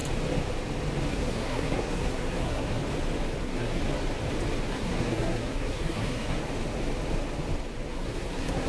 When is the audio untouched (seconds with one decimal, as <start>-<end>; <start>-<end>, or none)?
0.0-1.1; 2.8-3.4; 3.8-4.7; 6.4-7.9